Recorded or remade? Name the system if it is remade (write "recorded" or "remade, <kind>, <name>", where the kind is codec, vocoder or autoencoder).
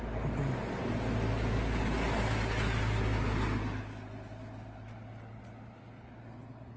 recorded